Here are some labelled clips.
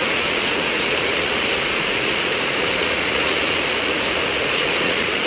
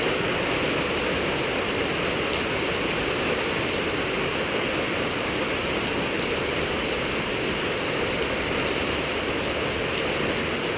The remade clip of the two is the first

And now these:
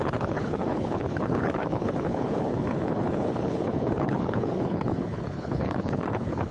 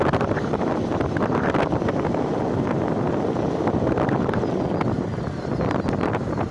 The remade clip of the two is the first